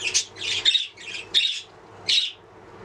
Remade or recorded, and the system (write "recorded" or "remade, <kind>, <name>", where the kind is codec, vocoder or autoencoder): recorded